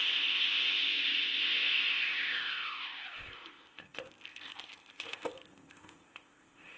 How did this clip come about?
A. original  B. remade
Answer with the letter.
B